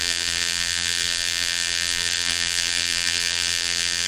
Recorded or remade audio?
remade